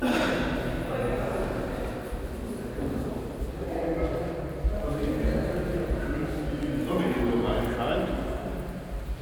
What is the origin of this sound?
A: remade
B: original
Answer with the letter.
B